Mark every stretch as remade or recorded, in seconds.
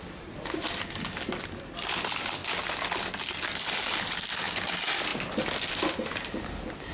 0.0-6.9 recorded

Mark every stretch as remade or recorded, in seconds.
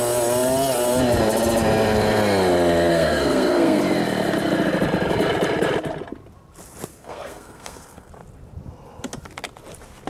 0.0-2.9 recorded; 2.9-3.8 remade; 3.8-6.9 recorded; 6.9-8.1 remade; 8.1-10.1 recorded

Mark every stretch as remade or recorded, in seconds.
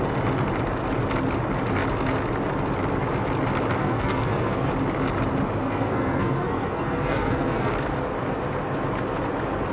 0.0-3.8 recorded; 3.8-4.7 remade; 4.7-5.6 recorded; 5.6-7.7 remade; 7.7-9.7 recorded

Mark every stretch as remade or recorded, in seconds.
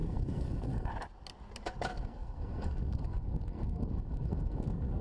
0.0-0.9 remade; 0.9-1.9 recorded; 1.9-5.0 remade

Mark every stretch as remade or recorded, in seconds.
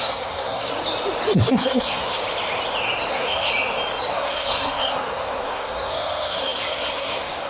0.0-0.7 remade; 0.7-1.5 recorded; 1.5-2.2 remade; 2.2-3.1 recorded; 3.1-3.5 remade; 3.5-4.1 recorded; 4.1-7.5 remade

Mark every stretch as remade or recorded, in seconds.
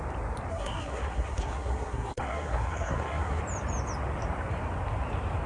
0.0-0.5 recorded; 0.5-3.4 remade; 3.4-5.5 recorded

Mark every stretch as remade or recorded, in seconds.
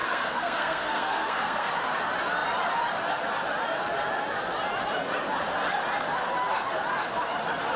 0.0-1.7 remade; 1.7-7.8 recorded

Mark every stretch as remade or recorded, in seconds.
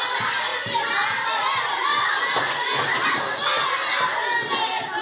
0.0-5.0 recorded